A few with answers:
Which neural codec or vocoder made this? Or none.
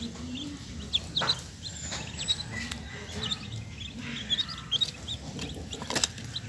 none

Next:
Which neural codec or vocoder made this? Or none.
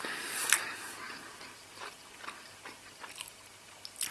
none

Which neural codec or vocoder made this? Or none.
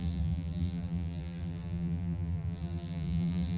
vocoder, BigVGAN v2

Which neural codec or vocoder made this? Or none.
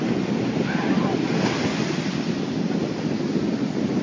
none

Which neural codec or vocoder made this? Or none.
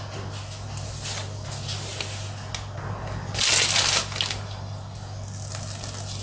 none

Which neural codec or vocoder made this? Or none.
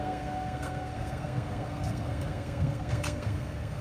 codec, SNAC